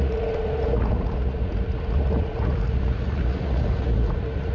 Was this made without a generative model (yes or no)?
no